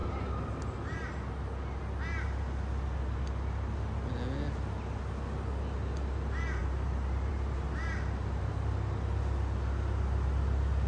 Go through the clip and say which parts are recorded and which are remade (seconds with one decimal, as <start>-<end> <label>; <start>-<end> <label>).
0.0-10.9 recorded